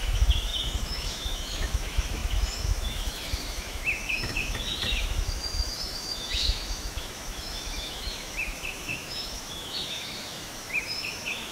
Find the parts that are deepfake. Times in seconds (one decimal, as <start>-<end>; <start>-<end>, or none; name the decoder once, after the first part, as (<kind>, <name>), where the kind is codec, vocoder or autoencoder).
0.0-11.5 (autoencoder, DAC-VAE)